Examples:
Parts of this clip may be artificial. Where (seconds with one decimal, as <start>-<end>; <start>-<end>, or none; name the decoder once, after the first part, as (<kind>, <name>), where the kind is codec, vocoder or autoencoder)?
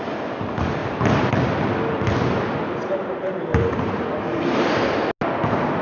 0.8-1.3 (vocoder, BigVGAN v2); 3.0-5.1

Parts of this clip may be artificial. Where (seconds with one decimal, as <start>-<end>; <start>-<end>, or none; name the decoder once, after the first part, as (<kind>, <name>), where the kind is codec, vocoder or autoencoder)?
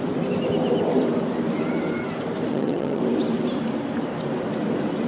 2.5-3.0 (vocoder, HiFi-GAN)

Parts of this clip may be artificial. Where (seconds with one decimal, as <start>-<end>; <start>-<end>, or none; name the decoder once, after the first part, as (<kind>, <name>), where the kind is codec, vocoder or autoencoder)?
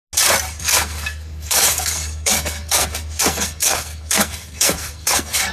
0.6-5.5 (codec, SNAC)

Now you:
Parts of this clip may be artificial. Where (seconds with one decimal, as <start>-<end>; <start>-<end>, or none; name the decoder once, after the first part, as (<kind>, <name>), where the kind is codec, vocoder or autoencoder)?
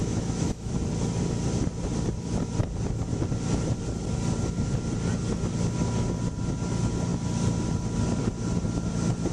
0.0-0.7 (autoencoder, DAC-VAE)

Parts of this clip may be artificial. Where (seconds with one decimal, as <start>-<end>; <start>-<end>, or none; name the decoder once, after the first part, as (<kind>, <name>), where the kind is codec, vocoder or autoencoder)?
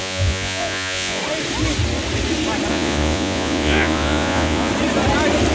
0.0-1.2 (vocoder, Vocos); 2.7-4.7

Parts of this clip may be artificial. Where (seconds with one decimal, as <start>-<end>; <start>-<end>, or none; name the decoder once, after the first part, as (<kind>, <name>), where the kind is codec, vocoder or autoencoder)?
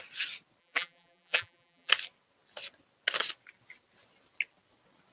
0.6-1.9 (vocoder, BigVGAN v2)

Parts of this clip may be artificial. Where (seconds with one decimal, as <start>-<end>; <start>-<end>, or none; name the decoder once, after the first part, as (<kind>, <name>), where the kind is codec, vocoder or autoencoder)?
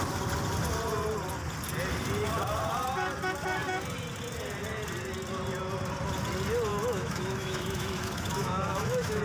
6.7-9.2 (autoencoder, DAC-VAE)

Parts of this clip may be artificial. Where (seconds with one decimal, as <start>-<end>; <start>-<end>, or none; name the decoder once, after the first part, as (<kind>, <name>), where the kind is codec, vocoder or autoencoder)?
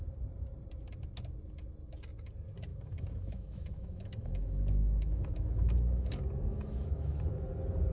2.7-6.1 (autoencoder, DAC-VAE); 6.5-7.2